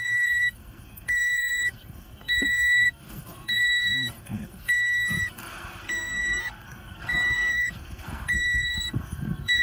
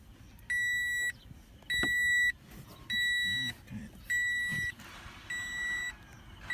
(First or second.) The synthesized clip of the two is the first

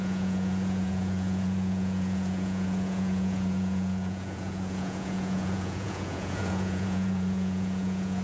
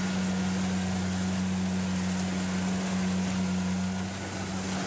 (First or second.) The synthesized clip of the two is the first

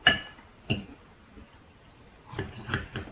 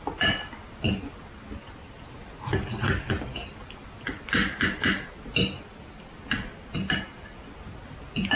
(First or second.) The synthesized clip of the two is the first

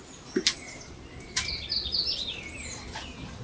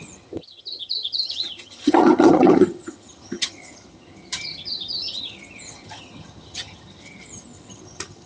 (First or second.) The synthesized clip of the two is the second